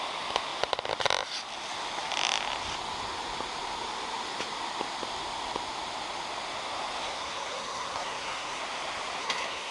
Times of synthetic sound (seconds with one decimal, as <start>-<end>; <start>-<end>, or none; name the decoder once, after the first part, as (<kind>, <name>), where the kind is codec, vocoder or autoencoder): 7.0-8.6 (codec, SNAC); 9.2-9.7